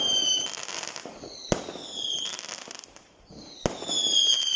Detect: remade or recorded recorded